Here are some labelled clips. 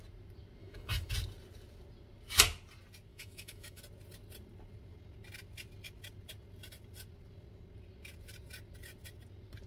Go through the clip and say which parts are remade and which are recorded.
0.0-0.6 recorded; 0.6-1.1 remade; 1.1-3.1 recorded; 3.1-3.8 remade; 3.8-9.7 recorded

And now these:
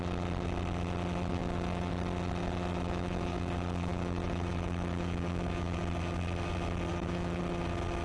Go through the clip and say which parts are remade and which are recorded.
0.0-1.4 recorded; 1.4-1.9 remade; 1.9-2.4 recorded; 2.4-5.8 remade; 5.8-6.9 recorded; 6.9-7.4 remade; 7.4-8.0 recorded

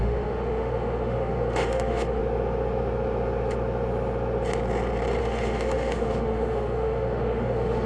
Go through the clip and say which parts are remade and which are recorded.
0.0-2.2 remade; 2.2-5.2 recorded; 5.2-7.9 remade

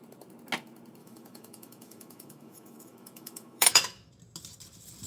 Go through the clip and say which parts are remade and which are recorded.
0.0-1.0 recorded; 1.0-4.1 remade; 4.1-5.1 recorded

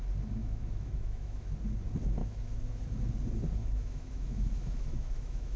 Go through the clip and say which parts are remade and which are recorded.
0.0-0.4 recorded; 0.4-1.5 remade; 1.5-2.2 recorded; 2.2-2.8 remade; 2.8-3.6 recorded; 3.6-5.6 remade

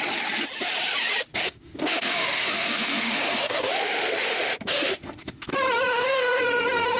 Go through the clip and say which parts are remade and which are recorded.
0.0-1.3 recorded; 1.3-5.5 remade; 5.5-5.9 recorded; 5.9-6.4 remade; 6.4-7.0 recorded

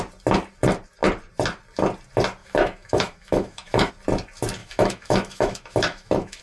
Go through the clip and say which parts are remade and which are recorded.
0.0-2.4 recorded; 2.4-3.9 remade; 3.9-4.6 recorded; 4.6-6.4 remade